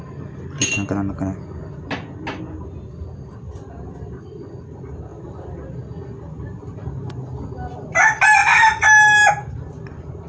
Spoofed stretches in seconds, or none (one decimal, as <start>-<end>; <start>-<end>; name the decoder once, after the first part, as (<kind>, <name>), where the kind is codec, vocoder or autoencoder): none